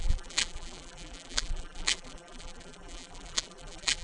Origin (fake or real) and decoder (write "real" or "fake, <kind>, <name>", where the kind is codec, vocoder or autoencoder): fake, vocoder, BigVGAN v2